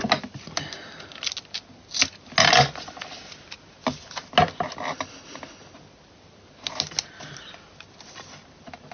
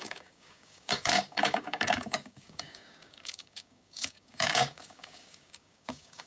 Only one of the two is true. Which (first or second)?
first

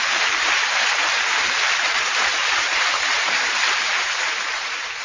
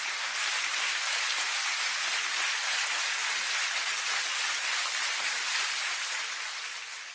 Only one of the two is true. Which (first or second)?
second